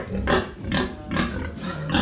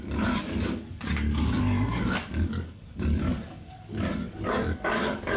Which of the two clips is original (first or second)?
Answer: first